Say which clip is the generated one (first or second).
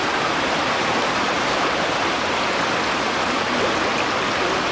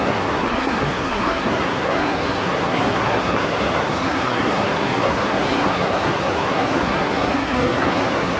second